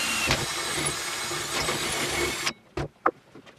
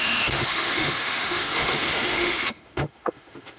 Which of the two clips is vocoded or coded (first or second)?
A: second